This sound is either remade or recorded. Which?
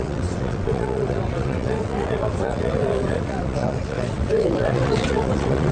remade